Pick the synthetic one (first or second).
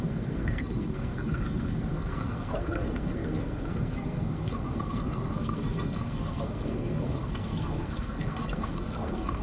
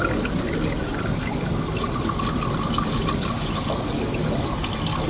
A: first